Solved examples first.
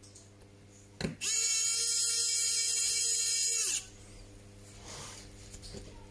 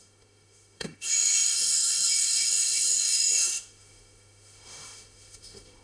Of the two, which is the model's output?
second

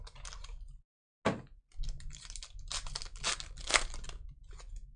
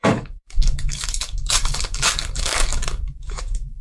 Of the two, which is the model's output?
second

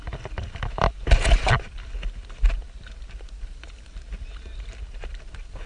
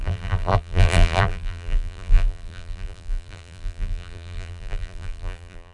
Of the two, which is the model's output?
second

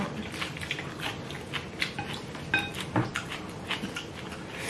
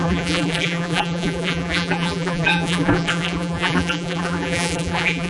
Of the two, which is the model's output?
second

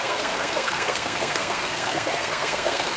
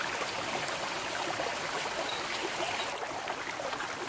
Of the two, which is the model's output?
first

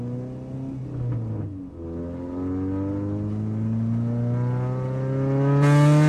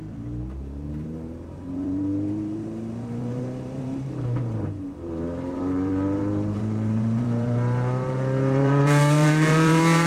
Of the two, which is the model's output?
second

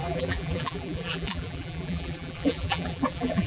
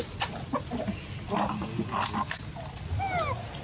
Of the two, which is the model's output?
first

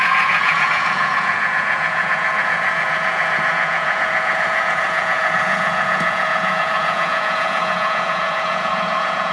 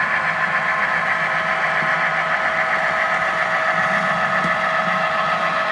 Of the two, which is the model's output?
first